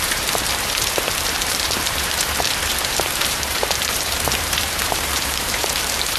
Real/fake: fake